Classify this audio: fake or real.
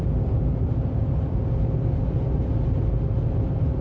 real